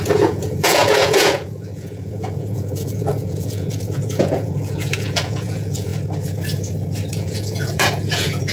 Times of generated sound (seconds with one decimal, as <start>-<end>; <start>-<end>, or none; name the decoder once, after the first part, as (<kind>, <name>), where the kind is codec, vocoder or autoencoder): 0.0-5.9 (vocoder, Vocos); 7.1-8.5